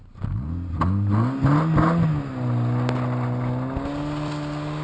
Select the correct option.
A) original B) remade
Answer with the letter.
A